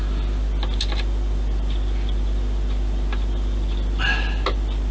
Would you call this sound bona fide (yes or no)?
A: yes